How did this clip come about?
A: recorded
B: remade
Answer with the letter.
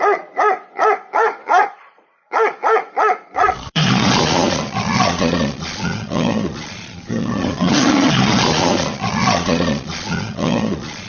B